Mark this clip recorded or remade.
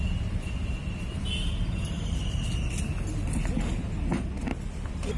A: recorded